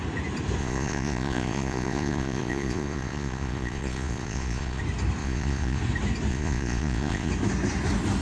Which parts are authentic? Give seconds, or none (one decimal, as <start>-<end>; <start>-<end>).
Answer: 0.0-0.6; 4.8-5.2; 5.8-6.3; 7.3-8.2